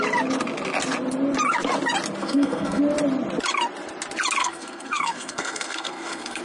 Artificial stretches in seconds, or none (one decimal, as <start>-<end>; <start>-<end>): 2.2-2.8; 4.4-6.4